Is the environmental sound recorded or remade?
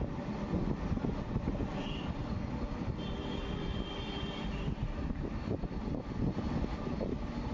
recorded